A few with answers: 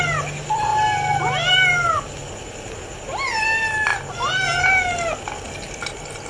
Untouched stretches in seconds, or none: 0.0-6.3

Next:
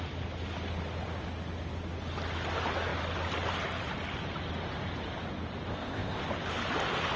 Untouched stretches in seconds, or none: 0.0-5.7; 6.2-7.2

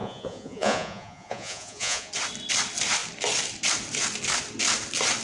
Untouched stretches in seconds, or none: 2.1-5.2

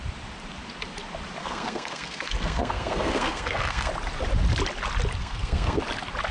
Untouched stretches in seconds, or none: 0.0-1.4; 3.9-5.2; 5.8-6.3

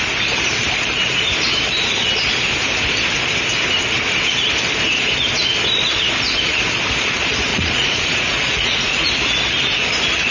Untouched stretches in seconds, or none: 0.0-7.5; 9.1-10.3

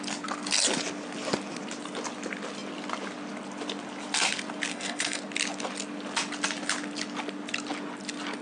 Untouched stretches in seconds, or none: 0.0-4.7; 5.2-8.4

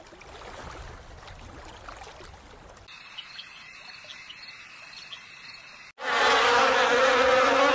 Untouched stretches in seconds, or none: 0.0-7.7